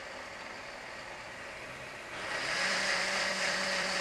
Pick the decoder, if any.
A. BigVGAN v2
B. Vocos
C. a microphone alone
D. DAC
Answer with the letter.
A